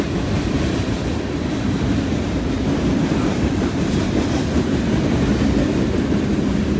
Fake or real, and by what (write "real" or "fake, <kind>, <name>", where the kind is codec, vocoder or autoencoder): fake, vocoder, BigVGAN v2